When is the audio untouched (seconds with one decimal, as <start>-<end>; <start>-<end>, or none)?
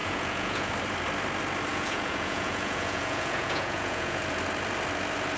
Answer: 0.7-1.7; 4.2-5.4